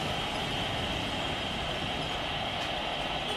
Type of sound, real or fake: real